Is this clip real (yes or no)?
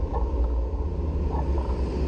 yes